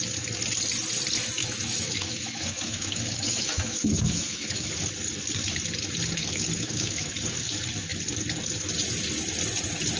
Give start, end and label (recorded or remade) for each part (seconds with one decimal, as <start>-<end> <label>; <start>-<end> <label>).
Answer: 0.0-1.4 recorded; 1.4-4.7 remade; 4.7-6.2 recorded; 6.2-7.1 remade; 7.1-10.0 recorded